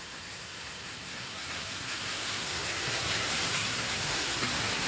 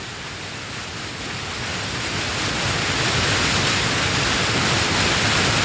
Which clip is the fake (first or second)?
first